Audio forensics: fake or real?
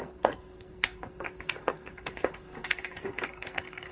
fake